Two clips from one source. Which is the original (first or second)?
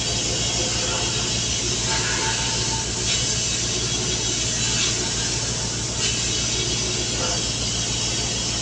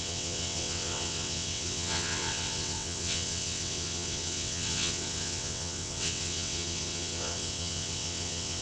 first